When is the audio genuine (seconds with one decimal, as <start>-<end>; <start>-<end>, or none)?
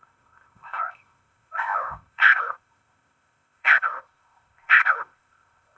none